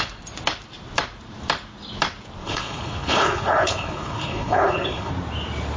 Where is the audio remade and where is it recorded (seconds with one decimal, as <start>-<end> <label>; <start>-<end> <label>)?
0.0-2.4 recorded; 2.4-5.1 remade; 5.1-5.8 recorded